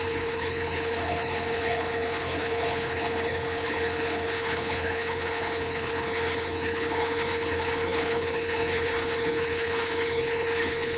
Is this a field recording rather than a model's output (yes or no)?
no